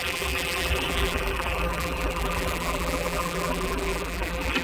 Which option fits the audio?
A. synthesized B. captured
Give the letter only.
A